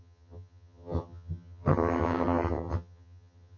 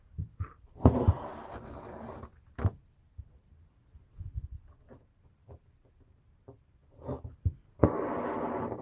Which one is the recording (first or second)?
second